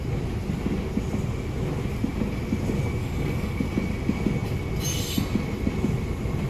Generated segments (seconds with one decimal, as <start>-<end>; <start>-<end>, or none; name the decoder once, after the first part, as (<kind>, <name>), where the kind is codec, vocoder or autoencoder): 3.0-3.6 (codec, DAC)